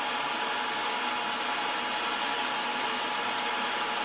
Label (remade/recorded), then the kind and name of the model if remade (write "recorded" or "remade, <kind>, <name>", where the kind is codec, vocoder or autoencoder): recorded